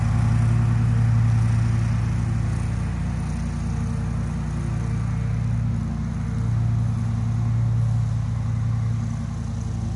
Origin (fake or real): real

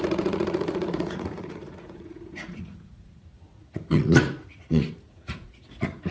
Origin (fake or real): fake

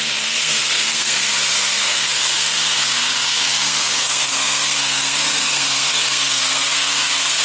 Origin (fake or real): fake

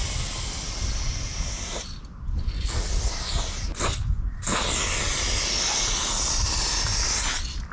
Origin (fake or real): real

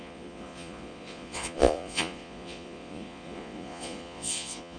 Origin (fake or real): fake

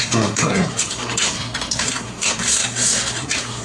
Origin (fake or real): fake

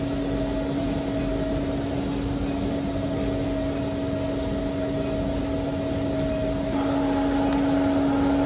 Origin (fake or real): real